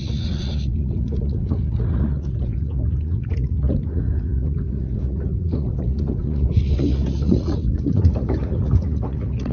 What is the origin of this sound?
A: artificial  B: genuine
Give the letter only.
A